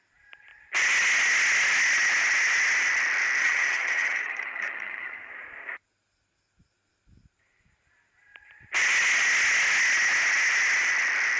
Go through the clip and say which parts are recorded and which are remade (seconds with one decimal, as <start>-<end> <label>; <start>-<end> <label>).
0.0-3.4 recorded; 3.4-5.3 remade; 5.3-11.4 recorded